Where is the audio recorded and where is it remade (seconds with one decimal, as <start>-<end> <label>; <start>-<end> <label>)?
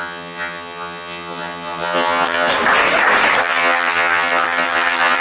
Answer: 0.0-2.5 remade; 2.5-3.4 recorded; 3.4-5.2 remade